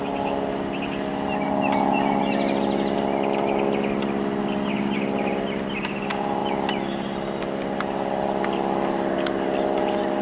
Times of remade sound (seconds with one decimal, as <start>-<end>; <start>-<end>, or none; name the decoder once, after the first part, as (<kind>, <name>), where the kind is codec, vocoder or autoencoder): none